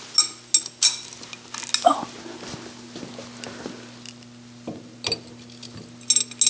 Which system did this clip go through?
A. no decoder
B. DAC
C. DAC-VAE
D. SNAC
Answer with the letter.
A